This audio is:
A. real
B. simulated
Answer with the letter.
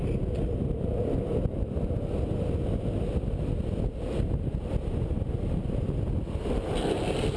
A